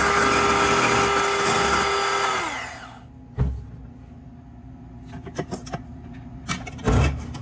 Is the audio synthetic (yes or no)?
no